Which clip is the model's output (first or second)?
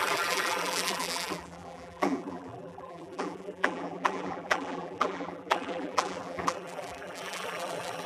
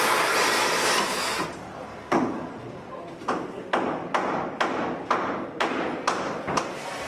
first